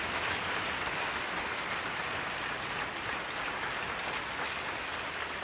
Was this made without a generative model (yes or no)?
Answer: yes